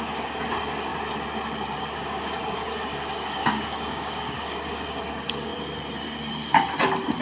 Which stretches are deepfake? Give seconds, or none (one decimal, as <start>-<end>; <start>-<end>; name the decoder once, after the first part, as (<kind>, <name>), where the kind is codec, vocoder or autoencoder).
0.0-0.9 (codec, DAC); 1.8-5.5